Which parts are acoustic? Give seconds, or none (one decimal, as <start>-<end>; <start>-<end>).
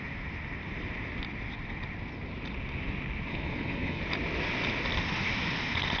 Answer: 0.0-3.3; 4.0-6.0